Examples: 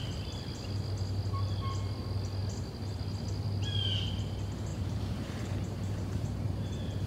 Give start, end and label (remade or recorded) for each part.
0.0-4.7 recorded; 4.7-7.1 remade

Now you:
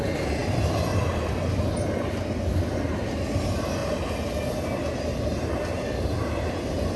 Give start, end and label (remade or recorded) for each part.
0.0-7.0 recorded

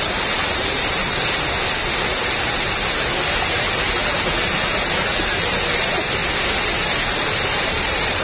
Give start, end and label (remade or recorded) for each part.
0.0-1.0 remade; 1.0-5.8 recorded; 5.8-6.2 remade; 6.2-7.6 recorded; 7.6-8.2 remade